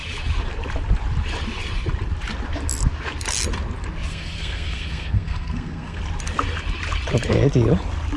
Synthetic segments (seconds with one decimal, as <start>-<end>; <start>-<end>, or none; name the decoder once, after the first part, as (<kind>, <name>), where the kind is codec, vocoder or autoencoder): 4.1-6.0 (codec, SNAC)